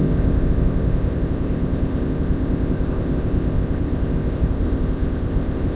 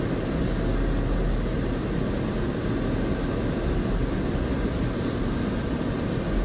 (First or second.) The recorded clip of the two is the second